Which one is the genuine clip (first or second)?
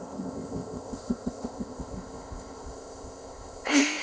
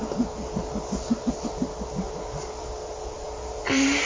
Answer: second